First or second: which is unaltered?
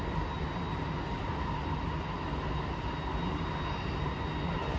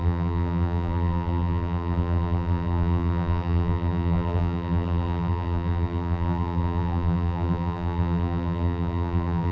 first